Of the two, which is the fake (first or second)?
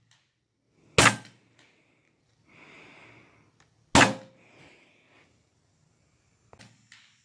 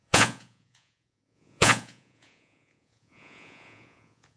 second